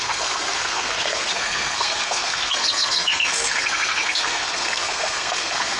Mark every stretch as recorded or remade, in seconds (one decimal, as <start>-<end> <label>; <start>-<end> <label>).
0.0-5.8 remade